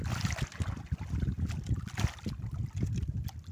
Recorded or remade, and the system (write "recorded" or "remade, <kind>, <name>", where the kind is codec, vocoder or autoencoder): recorded